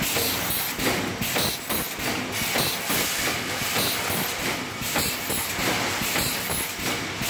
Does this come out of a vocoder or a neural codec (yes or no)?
no